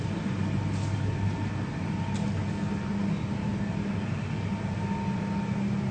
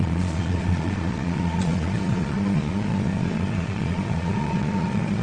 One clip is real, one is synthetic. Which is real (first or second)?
first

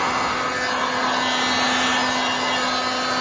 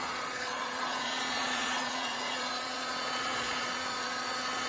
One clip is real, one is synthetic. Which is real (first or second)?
first